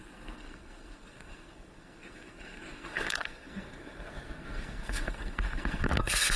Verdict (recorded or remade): remade